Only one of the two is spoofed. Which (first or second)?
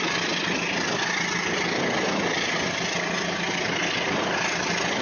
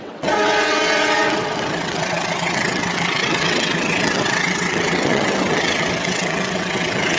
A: second